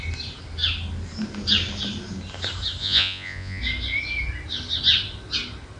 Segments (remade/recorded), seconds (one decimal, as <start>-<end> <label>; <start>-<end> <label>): 0.0-2.8 recorded; 2.8-3.6 remade; 3.6-5.8 recorded